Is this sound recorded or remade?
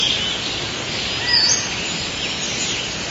recorded